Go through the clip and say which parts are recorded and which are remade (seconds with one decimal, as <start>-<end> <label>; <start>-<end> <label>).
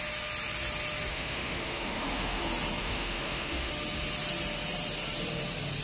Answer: 0.0-1.1 recorded; 1.1-2.4 remade; 2.4-2.8 recorded; 2.8-3.7 remade; 3.7-5.8 recorded